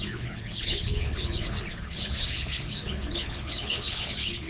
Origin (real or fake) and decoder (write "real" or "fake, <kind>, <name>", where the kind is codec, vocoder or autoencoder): fake, codec, HILCodec